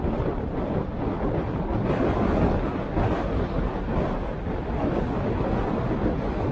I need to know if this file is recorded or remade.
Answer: recorded